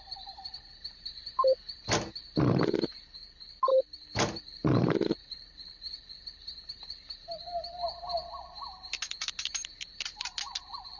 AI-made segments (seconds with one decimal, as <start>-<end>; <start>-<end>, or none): 3.7-5.8